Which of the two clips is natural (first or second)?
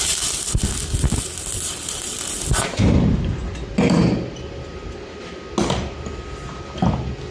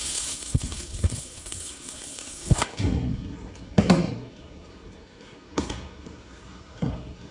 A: first